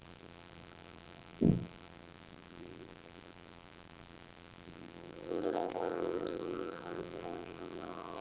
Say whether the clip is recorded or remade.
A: remade